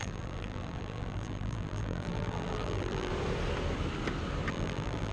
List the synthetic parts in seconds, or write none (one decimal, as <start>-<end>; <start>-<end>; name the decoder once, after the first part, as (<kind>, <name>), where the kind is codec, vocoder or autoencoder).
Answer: 0.0-3.1 (vocoder, BigVGAN v2); 4.5-5.1

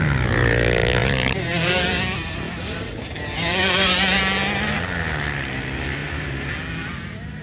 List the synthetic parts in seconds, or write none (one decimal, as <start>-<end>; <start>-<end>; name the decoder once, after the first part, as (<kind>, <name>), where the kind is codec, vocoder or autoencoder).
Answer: 1.0-4.2 (vocoder, BigVGAN v2); 6.0-6.5

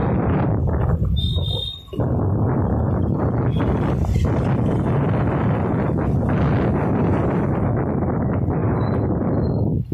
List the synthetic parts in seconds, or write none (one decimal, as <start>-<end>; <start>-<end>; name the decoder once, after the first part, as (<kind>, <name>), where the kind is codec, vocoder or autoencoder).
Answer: 8.6-9.2 (vocoder, BigVGAN v2)

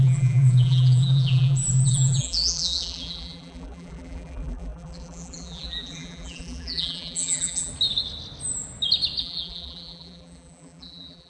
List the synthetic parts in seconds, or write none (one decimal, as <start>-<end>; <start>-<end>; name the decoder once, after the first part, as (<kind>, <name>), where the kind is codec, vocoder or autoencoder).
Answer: 0.0-7.7 (vocoder, BigVGAN v2); 9.2-11.3

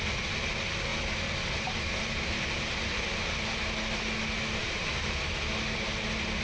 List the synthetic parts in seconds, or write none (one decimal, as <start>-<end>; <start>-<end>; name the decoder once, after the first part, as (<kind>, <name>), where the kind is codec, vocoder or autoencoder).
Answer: 0.9-3.0 (vocoder, BigVGAN v2)